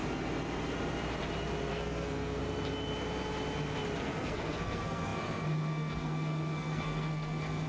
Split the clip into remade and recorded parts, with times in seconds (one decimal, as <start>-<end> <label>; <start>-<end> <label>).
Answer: 0.0-1.7 recorded; 1.7-2.4 remade; 2.4-4.0 recorded; 4.0-7.7 remade